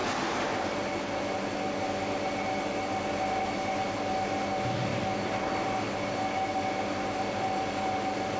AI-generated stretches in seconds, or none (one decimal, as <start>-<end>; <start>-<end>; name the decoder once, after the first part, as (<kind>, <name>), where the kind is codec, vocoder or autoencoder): 0.0-0.6 (vocoder, BigVGAN v2)